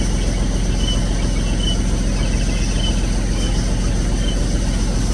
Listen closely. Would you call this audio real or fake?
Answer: real